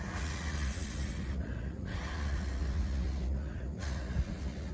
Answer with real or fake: fake